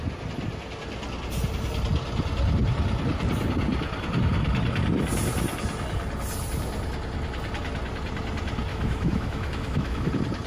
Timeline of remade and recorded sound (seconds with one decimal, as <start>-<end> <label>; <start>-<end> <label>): 0.0-8.7 recorded; 8.7-10.1 remade; 10.1-10.5 recorded